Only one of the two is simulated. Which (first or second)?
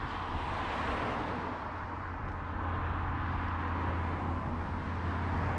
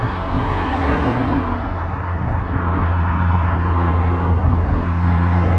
second